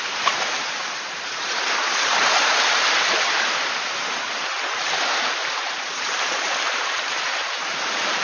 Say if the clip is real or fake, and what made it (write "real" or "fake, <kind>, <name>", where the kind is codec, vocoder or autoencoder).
fake, vocoder, BigVGAN v2